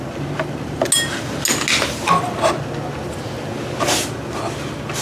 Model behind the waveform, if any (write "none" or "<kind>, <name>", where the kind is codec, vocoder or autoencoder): none